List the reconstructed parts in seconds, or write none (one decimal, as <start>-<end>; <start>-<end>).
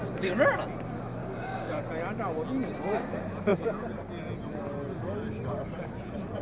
1.2-1.8